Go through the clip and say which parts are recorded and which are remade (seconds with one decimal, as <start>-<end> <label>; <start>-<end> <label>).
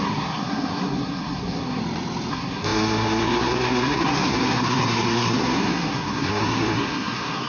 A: 0.0-1.8 remade; 1.8-2.3 recorded; 2.3-7.5 remade